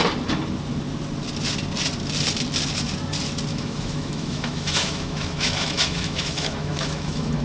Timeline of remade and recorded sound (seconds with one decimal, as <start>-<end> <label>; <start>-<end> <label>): 0.0-3.5 recorded; 3.5-7.4 remade